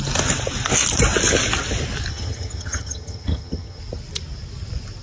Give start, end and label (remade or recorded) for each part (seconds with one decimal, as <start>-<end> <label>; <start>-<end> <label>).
0.0-2.1 recorded; 2.1-3.8 remade; 3.8-5.0 recorded